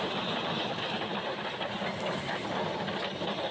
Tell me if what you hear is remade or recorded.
recorded